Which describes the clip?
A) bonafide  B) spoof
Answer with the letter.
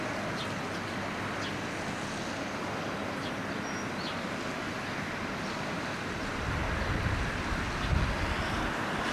A